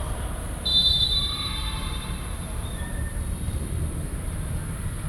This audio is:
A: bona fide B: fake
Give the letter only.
B